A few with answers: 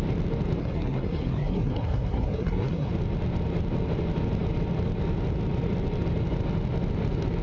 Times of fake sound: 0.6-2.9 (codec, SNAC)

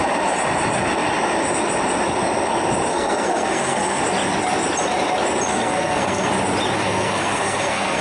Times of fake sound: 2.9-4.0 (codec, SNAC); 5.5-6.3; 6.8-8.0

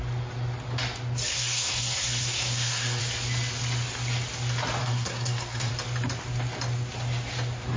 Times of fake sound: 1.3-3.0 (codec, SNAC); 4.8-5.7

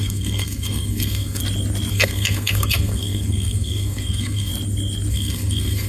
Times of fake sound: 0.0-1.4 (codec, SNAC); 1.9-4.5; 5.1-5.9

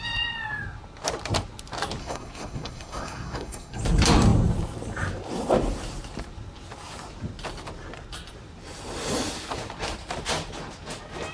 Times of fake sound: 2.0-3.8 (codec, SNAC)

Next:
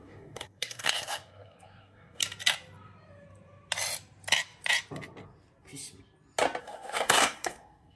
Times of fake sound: 0.0-2.2 (codec, SNAC); 6.6-8.0